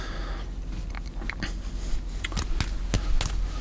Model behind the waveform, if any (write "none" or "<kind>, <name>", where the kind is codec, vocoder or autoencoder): none